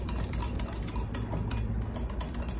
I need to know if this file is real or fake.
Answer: real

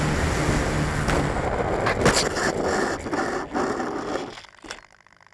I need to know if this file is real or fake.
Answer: real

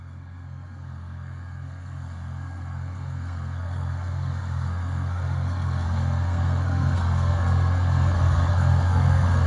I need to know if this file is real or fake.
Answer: fake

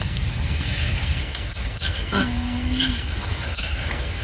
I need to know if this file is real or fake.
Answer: fake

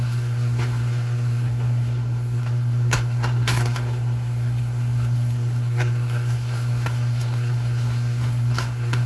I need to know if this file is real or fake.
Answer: fake